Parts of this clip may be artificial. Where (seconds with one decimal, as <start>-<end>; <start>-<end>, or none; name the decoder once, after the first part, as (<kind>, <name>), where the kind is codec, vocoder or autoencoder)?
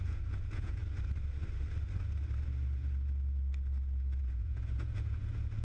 0.0-0.8 (vocoder, Vocos); 4.2-5.6